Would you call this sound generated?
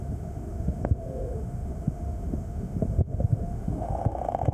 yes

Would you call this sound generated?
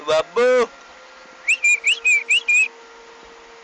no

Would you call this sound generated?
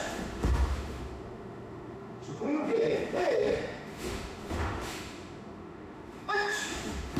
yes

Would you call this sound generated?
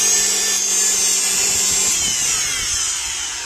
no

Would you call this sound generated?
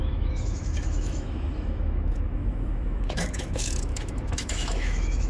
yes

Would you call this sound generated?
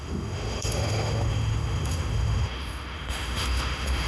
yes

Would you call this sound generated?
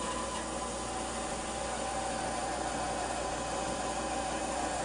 no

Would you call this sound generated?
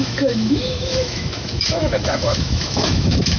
yes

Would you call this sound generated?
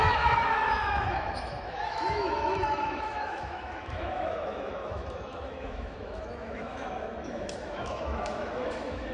yes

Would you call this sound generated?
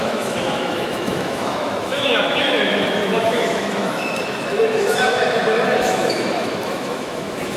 yes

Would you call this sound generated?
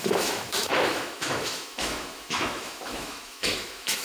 yes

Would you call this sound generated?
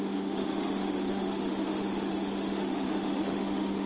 yes